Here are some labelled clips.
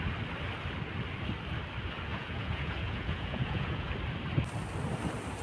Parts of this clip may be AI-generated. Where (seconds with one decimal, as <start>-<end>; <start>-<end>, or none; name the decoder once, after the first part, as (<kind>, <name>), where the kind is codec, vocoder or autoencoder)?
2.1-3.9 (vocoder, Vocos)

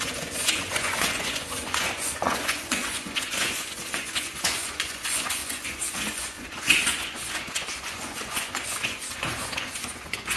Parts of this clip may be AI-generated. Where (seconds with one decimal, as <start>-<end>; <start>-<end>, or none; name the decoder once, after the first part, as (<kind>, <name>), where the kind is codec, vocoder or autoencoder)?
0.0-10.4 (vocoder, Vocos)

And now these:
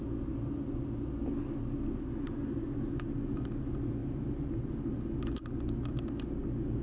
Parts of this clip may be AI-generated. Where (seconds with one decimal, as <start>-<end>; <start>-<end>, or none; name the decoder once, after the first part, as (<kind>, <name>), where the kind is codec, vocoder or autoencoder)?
none

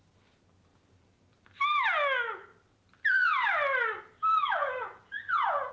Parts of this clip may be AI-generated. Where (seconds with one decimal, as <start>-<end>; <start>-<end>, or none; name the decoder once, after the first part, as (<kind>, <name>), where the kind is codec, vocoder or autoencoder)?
4.6-5.7 (vocoder, Vocos)

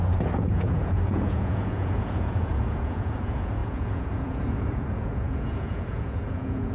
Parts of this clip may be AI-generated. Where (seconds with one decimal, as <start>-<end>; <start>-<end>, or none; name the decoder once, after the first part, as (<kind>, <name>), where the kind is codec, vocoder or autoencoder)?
0.0-6.7 (vocoder, Vocos)

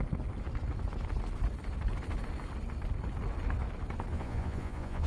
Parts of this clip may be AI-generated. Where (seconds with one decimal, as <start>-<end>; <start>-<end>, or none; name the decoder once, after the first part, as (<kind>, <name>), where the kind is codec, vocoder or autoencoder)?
4.1-5.1 (vocoder, Vocos)